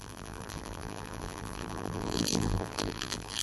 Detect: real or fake fake